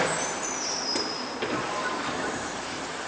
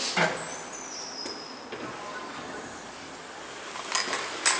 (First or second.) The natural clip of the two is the second